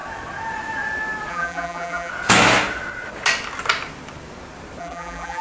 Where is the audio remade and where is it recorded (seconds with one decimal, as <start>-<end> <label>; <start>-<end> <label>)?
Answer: 0.0-1.3 recorded; 1.3-2.1 remade; 2.1-4.8 recorded; 4.8-5.4 remade